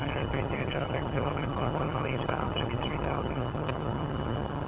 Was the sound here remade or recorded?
remade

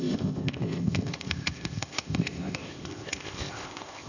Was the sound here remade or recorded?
remade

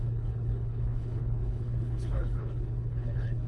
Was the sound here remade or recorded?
remade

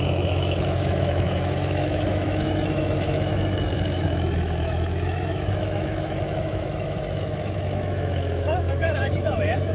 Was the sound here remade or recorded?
remade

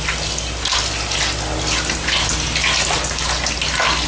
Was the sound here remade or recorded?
recorded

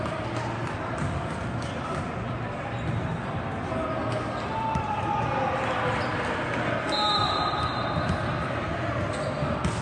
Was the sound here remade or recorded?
recorded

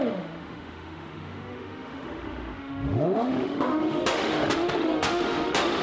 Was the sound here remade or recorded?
remade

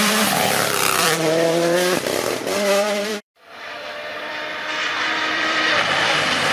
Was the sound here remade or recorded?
remade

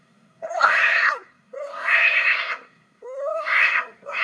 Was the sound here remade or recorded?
remade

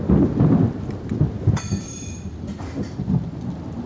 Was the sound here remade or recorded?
recorded